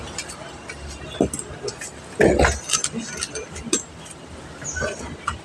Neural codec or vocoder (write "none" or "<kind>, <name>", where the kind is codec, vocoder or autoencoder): none